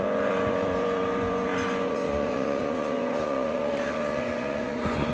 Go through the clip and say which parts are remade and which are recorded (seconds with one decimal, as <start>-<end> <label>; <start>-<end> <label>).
0.0-5.1 remade